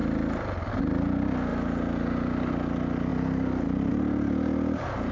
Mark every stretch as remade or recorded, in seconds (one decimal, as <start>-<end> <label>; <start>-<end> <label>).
0.0-5.1 recorded